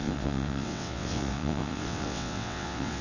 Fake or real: fake